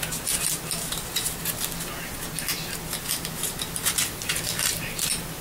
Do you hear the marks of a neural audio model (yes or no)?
no